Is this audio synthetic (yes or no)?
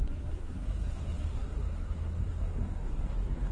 yes